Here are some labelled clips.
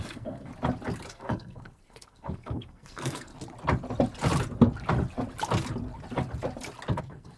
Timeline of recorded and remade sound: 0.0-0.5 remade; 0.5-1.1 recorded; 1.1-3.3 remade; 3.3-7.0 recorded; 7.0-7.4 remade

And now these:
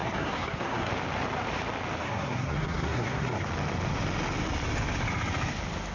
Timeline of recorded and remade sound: 0.0-0.9 remade; 0.9-2.0 recorded; 2.0-3.5 remade; 3.5-5.9 recorded

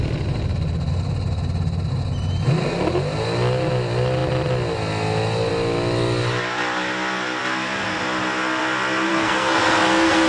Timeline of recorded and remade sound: 0.0-9.1 recorded; 9.1-10.3 remade

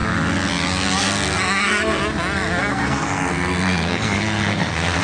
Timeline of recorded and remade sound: 0.0-1.0 recorded; 1.0-2.0 remade; 2.0-2.6 recorded; 2.6-5.0 remade

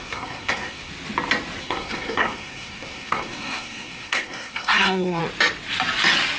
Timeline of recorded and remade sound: 0.0-0.9 remade; 0.9-1.6 recorded; 1.6-5.2 remade; 5.2-6.4 recorded

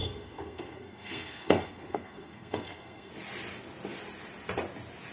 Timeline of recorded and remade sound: 0.0-3.1 remade; 3.1-5.1 recorded